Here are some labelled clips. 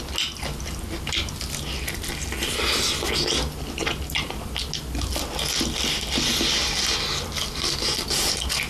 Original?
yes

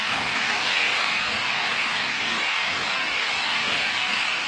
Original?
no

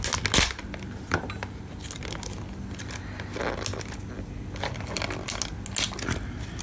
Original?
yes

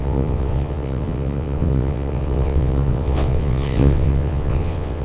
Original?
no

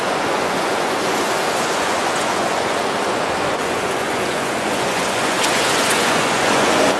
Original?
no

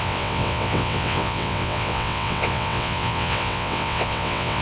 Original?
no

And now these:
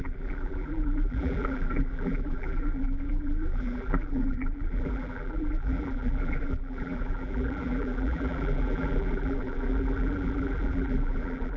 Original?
no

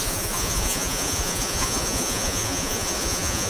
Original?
no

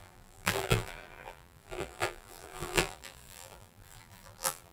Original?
no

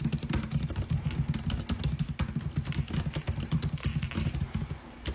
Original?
yes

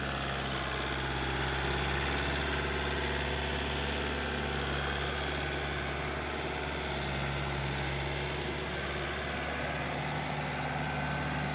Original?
yes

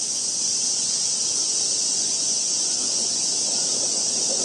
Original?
no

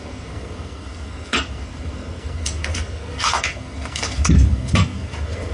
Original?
no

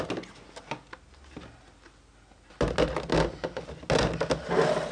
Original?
yes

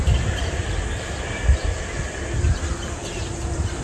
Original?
no